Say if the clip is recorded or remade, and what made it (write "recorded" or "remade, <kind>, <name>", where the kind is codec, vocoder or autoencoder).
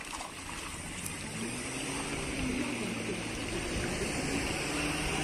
recorded